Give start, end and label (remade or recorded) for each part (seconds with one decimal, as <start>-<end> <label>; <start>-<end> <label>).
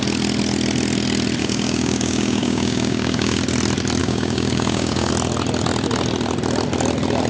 0.0-1.4 recorded; 1.4-3.4 remade; 3.4-4.0 recorded; 4.0-5.1 remade; 5.1-7.3 recorded